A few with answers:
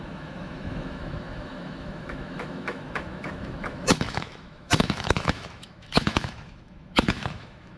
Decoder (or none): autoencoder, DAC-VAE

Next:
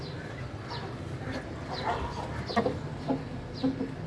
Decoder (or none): none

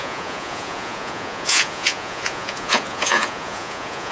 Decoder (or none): vocoder, Vocos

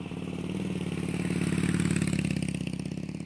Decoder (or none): none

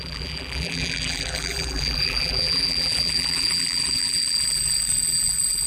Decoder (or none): vocoder, BigVGAN v2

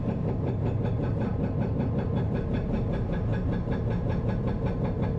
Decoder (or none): vocoder, BigVGAN v2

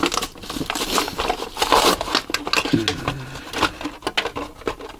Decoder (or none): none